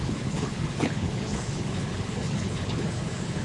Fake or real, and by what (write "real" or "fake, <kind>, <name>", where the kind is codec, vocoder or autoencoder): fake, codec, HILCodec